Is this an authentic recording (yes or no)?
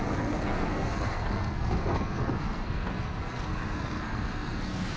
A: no